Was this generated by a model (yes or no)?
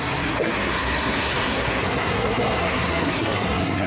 yes